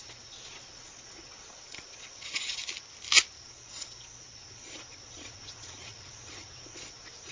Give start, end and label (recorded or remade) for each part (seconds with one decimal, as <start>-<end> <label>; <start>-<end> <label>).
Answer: 0.0-2.6 remade; 2.6-3.4 recorded; 3.4-7.3 remade